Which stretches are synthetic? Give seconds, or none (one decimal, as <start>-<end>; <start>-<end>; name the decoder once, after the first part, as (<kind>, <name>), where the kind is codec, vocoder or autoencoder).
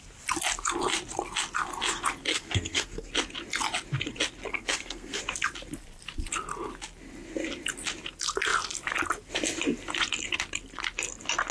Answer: 2.3-3.1 (codec, SNAC); 4.5-5.2